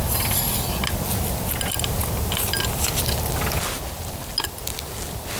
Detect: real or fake real